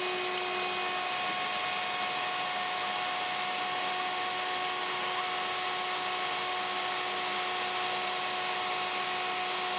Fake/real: real